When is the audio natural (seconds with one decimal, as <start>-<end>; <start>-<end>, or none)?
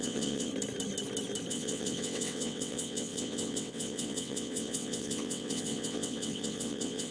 0.5-1.5